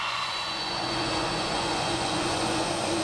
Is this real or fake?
fake